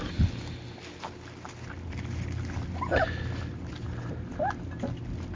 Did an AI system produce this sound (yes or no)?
no